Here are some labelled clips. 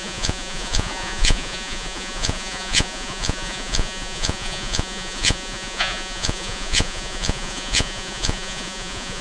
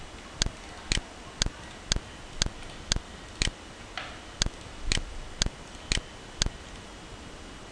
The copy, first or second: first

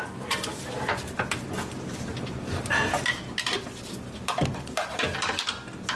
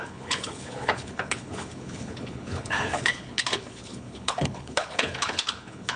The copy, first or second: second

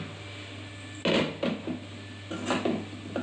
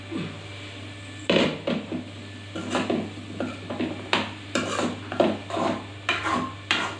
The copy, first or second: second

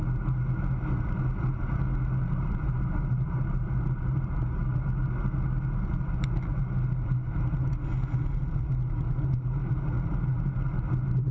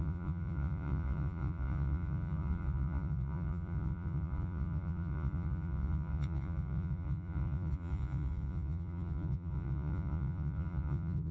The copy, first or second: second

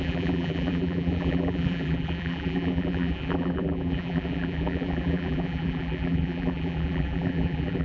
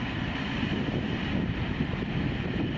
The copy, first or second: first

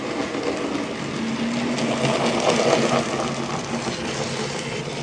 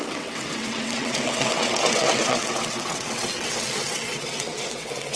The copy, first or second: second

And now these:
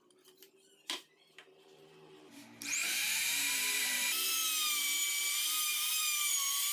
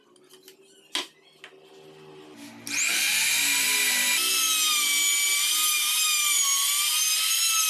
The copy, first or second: first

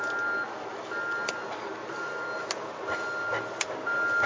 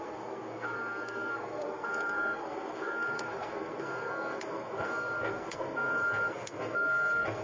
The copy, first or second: second